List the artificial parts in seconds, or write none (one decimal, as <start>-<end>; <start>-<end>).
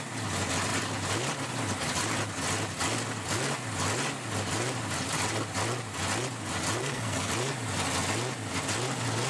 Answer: 6.8-7.3